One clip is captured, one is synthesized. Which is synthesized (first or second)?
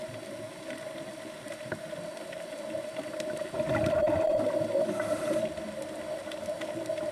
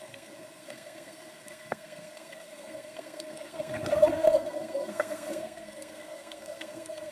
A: second